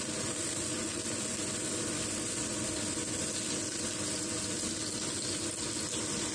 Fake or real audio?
real